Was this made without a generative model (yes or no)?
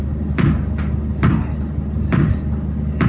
yes